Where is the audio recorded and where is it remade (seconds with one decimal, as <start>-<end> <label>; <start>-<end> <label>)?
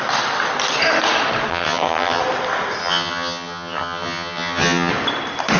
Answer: 0.0-1.5 recorded; 1.5-2.2 remade; 2.2-2.8 recorded; 2.8-4.9 remade; 4.9-5.6 recorded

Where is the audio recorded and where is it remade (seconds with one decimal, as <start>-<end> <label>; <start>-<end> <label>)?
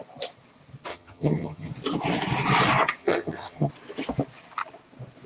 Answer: 0.0-0.9 recorded; 0.9-1.7 remade; 1.7-3.0 recorded; 3.0-3.7 remade; 3.7-5.3 recorded